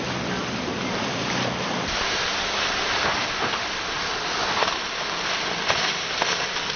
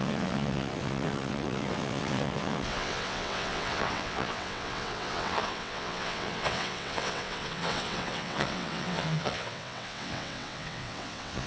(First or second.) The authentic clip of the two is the first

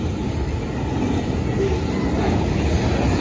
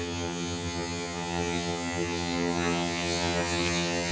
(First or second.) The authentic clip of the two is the first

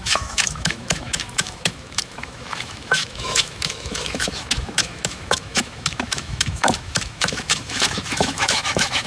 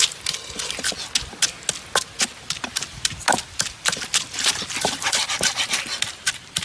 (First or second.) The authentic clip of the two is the second